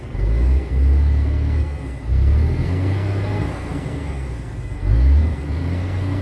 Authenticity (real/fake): fake